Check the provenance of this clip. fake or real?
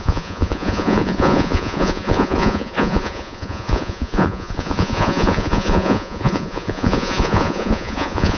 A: fake